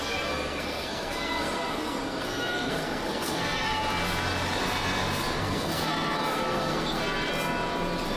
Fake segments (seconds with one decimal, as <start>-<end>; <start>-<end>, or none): 0.0-3.8; 5.4-7.3